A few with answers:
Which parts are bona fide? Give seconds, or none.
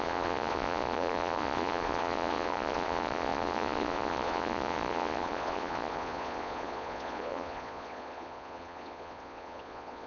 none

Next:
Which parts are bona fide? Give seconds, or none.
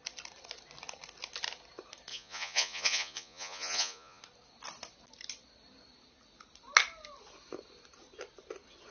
0.0-2.1; 4.2-8.9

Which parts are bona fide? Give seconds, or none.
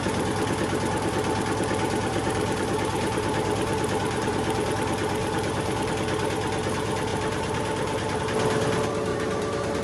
0.0-2.1; 4.7-5.2; 5.9-7.1; 8.2-9.1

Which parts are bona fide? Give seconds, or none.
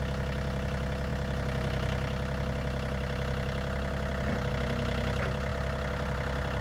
0.0-6.6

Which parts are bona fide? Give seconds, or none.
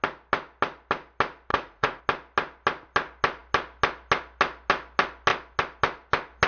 0.0-1.5; 2.0-6.5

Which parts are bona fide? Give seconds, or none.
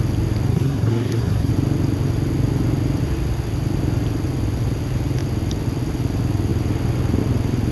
0.0-0.5; 1.5-7.7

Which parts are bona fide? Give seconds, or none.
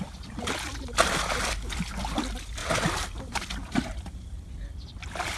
0.0-5.4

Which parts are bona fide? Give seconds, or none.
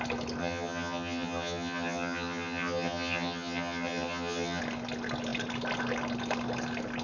0.0-0.4; 4.6-7.0